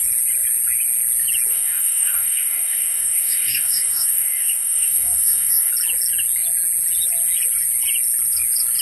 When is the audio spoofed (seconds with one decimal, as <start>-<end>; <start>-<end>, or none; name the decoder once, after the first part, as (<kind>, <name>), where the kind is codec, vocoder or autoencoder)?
1.5-5.7 (codec, DAC)